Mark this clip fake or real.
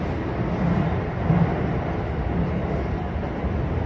real